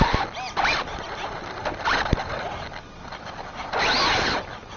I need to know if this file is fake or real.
real